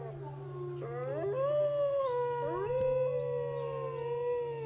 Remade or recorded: recorded